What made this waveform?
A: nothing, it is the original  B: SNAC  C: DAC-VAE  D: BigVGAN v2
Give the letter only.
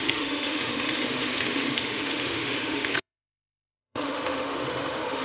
C